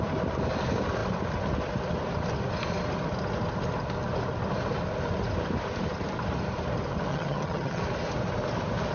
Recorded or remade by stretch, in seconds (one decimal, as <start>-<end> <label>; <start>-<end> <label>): 0.0-7.1 recorded; 7.1-7.8 remade; 7.8-8.9 recorded